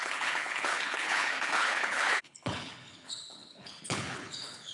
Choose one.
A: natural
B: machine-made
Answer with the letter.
B